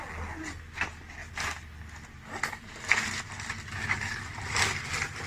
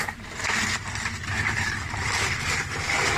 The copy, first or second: second